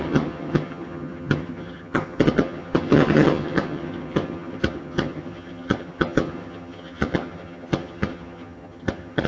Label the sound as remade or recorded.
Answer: remade